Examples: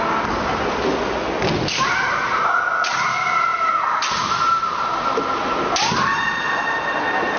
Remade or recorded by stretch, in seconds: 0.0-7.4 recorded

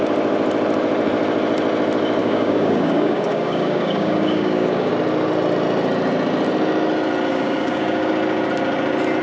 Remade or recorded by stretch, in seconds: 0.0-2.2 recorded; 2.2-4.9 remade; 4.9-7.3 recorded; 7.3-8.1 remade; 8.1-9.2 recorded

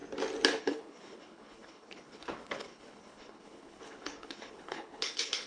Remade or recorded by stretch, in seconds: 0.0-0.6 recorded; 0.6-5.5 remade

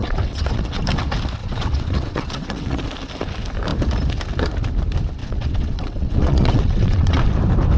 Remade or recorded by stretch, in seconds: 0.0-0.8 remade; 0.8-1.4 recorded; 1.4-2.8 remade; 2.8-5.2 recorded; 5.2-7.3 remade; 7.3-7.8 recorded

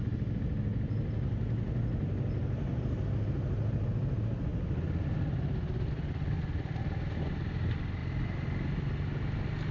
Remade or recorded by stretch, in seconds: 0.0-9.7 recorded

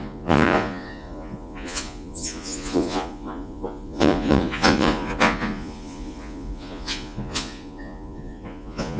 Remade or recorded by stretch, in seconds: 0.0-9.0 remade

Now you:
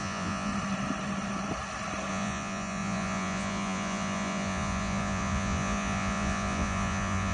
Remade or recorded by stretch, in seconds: 0.0-0.5 remade; 0.5-2.1 recorded; 2.1-7.3 remade

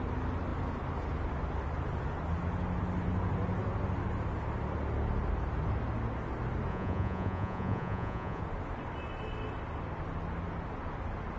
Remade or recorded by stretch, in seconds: 0.0-6.7 recorded; 6.7-8.4 remade; 8.4-11.4 recorded